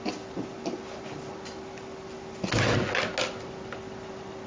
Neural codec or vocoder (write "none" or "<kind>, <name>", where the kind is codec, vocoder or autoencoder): none